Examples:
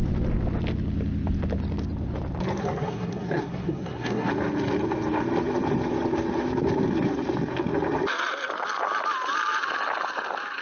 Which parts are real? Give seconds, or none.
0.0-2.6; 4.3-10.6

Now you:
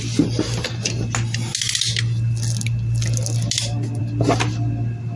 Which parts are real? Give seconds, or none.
0.0-5.2